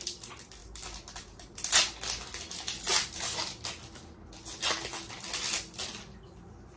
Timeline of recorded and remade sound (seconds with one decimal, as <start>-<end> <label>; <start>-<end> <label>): 0.0-6.8 recorded